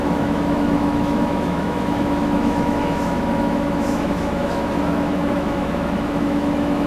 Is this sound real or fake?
fake